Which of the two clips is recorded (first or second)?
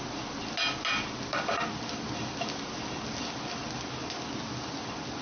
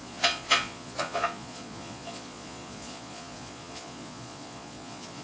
first